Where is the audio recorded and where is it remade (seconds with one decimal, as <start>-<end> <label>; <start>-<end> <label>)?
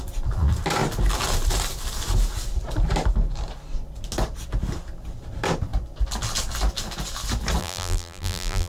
0.0-7.6 recorded; 7.6-8.7 remade